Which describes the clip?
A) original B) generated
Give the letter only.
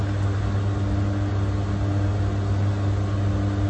A